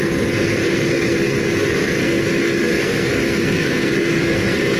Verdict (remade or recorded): remade